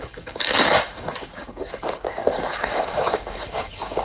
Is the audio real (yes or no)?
no